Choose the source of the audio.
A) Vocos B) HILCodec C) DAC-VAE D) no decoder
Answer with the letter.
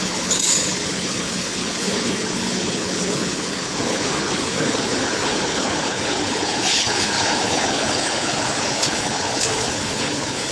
B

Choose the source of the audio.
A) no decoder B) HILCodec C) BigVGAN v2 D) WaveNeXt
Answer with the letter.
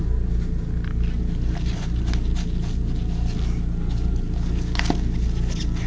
A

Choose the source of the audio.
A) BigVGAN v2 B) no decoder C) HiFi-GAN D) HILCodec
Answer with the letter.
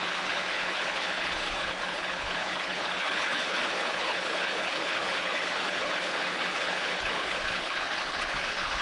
D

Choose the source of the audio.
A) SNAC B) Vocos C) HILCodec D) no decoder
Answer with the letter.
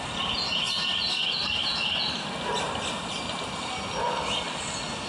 D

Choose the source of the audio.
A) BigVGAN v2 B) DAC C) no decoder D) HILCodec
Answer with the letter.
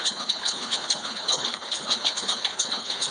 D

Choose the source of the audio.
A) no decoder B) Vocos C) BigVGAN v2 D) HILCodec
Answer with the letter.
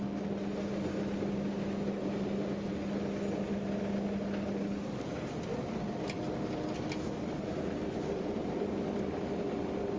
A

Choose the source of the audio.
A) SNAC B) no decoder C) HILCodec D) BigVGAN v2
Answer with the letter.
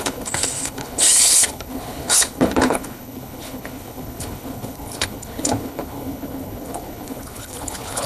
C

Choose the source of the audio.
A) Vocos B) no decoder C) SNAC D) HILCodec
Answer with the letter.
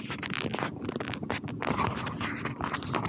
B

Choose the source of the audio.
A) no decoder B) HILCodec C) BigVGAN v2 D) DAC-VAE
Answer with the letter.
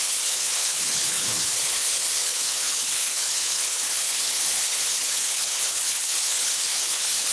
B